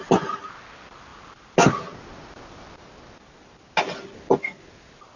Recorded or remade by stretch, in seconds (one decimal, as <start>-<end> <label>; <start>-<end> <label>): 0.0-5.2 recorded